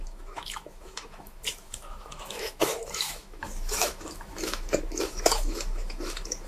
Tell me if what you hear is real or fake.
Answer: fake